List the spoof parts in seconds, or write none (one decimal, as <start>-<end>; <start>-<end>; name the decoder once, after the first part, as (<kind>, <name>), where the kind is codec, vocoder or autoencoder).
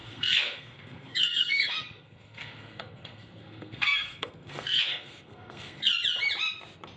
0.0-5.9 (codec, SNAC)